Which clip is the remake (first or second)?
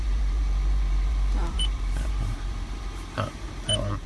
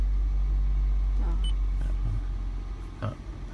first